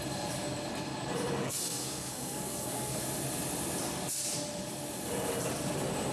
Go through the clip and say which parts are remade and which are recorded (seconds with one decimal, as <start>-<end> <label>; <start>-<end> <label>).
0.0-1.4 recorded; 1.4-3.0 remade; 3.0-6.1 recorded